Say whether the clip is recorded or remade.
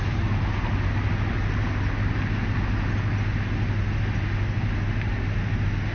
recorded